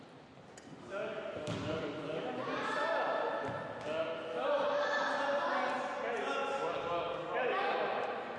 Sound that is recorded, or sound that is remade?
recorded